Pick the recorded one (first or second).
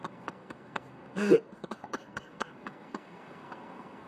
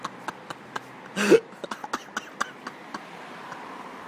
second